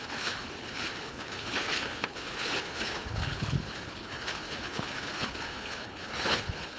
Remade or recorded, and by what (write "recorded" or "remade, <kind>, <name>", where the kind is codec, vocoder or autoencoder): remade, codec, HILCodec